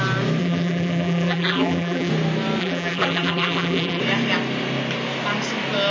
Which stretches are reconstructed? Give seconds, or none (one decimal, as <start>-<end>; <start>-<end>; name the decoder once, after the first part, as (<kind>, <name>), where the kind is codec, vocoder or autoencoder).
0.4-2.1 (vocoder, BigVGAN v2); 2.6-4.0